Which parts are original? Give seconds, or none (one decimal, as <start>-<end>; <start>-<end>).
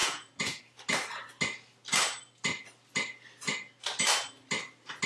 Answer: 0.6-5.1